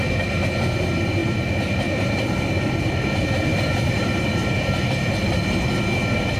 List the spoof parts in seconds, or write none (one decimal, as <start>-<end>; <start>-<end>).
1.2-2.0; 3.5-4.8